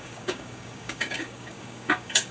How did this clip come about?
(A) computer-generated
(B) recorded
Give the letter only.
A